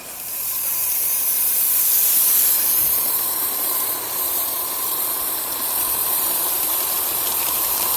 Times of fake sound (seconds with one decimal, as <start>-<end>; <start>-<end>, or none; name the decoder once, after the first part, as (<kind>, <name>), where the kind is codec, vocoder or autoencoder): 0.0-8.0 (vocoder, BigVGAN v2)